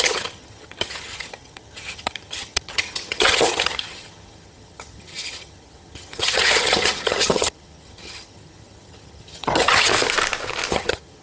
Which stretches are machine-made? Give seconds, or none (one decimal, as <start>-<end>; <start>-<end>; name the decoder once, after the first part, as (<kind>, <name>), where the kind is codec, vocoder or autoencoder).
0.0-9.9 (vocoder, HiFi-GAN); 10.7-11.2